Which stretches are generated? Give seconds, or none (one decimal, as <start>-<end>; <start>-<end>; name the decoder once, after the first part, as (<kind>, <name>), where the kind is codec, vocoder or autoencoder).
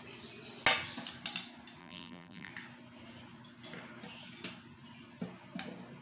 1.8-2.5 (vocoder, BigVGAN v2)